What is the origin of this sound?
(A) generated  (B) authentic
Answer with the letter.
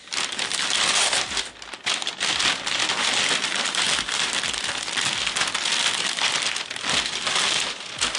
B